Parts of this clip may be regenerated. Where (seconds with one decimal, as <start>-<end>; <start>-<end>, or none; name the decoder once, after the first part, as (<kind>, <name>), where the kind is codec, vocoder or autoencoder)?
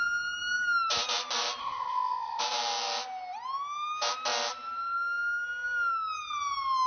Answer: 1.6-2.4 (codec, ZipCodec)